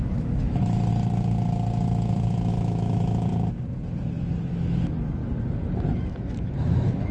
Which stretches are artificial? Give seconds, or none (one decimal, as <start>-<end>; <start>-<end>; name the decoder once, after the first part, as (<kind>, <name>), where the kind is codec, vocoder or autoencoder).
0.0-0.9 (autoencoder, DAC-VAE); 2.5-3.3; 4.5-5.2; 5.9-7.1